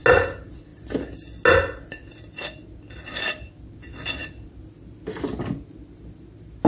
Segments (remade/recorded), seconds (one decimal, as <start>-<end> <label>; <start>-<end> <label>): 0.0-6.7 recorded